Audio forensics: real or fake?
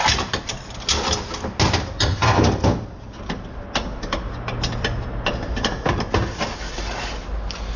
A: real